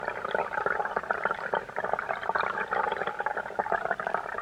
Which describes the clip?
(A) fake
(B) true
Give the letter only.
B